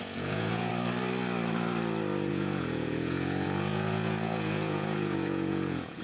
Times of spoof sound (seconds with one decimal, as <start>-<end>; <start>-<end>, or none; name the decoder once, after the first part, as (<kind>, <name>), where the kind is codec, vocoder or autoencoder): 0.0-0.7 (vocoder, Vocos); 2.3-6.0